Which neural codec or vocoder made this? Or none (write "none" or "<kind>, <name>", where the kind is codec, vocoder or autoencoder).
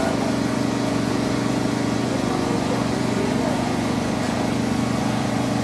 vocoder, Vocos